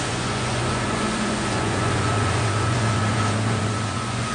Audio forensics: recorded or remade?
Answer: remade